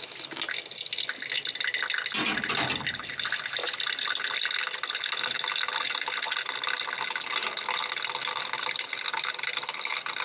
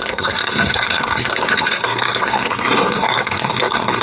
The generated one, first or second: second